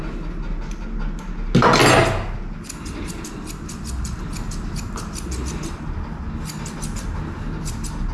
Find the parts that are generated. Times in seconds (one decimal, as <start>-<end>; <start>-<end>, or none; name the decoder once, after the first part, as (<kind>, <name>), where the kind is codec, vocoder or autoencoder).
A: none